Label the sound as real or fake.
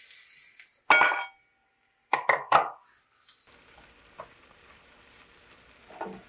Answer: real